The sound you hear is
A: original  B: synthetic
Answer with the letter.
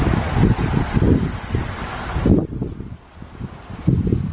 A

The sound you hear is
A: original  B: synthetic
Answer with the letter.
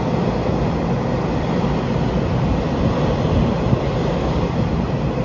A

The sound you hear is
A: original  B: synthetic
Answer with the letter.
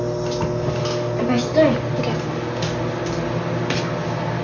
A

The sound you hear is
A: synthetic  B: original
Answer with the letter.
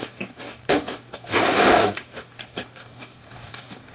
A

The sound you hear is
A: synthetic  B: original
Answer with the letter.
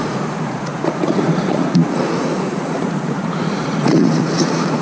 A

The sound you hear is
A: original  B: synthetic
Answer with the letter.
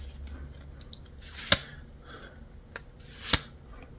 A